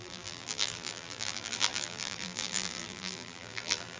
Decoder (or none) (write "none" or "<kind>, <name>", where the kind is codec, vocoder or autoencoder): vocoder, BigVGAN v2